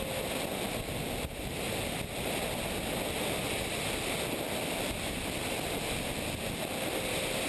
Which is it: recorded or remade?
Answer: recorded